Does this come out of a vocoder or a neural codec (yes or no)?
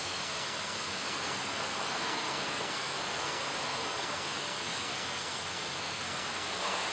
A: yes